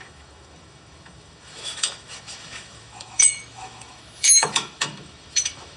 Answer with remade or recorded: remade